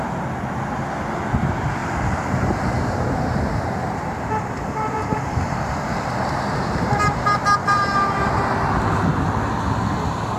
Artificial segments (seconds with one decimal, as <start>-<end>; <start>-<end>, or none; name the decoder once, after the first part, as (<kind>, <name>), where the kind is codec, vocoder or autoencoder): 1.8-7.0 (vocoder, BigVGAN v2); 7.6-8.3